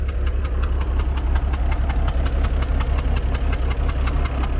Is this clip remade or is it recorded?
recorded